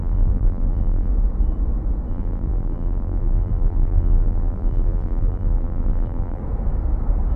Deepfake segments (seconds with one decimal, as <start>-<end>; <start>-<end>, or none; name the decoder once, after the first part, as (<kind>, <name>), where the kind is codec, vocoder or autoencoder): 0.0-1.1 (vocoder, BigVGAN v2); 2.1-6.4